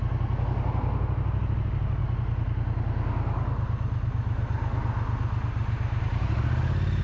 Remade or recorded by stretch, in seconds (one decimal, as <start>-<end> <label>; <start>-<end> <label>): 0.0-7.0 recorded